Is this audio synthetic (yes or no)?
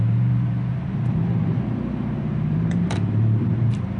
yes